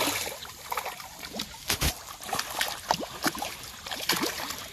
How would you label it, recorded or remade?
recorded